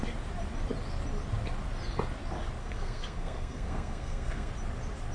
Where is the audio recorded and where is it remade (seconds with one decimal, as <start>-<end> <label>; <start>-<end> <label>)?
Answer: 0.0-2.6 recorded; 2.6-4.5 remade; 4.5-5.1 recorded